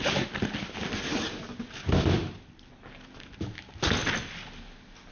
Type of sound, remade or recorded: recorded